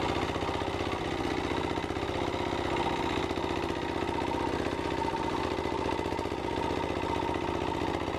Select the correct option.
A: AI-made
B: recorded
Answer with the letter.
B